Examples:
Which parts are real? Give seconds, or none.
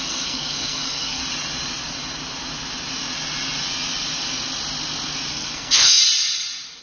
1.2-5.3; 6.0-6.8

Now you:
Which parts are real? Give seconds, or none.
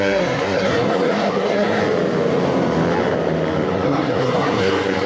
1.8-3.7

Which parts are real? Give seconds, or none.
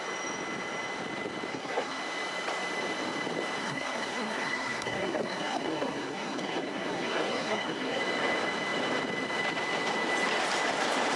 0.0-1.5; 2.0-3.6; 8.0-11.2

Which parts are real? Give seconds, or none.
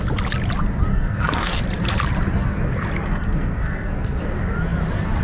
0.0-0.9; 1.6-3.0; 4.2-5.2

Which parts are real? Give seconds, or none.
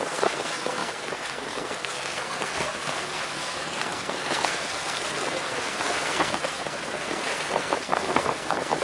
none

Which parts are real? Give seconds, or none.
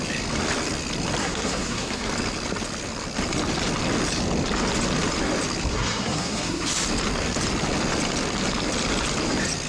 0.0-1.2; 2.1-5.7; 6.7-9.7